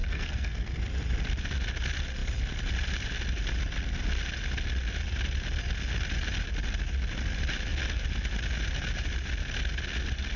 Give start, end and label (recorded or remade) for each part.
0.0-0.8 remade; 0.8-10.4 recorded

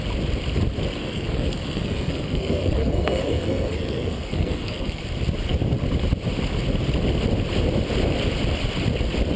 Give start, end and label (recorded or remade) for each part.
0.0-1.0 recorded; 1.0-5.0 remade; 5.0-9.4 recorded

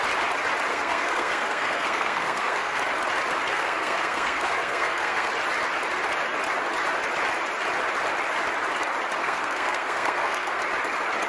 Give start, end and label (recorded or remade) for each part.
0.0-0.7 recorded; 0.7-2.8 remade; 2.8-3.5 recorded; 3.5-5.3 remade; 5.3-9.2 recorded; 9.2-10.6 remade; 10.6-11.3 recorded

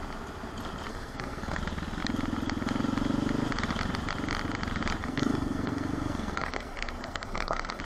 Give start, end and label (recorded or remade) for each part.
0.0-0.9 recorded; 0.9-1.6 remade; 1.6-5.0 recorded; 5.0-7.8 remade

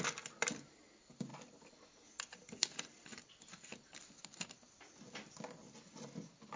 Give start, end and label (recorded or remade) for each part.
0.0-6.6 recorded

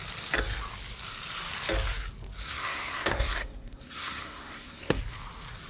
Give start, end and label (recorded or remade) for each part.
0.0-2.4 recorded; 2.4-5.0 remade; 5.0-5.7 recorded

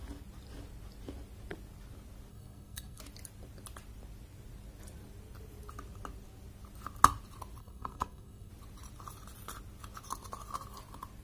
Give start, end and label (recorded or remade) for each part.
0.0-2.3 recorded; 2.3-3.0 remade; 3.0-7.6 recorded; 7.6-8.5 remade; 8.5-11.2 recorded

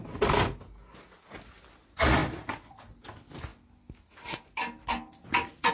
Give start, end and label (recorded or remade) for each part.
0.0-5.7 recorded